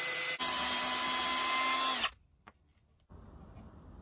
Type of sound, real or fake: real